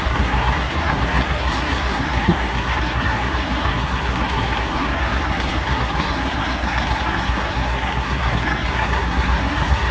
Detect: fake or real fake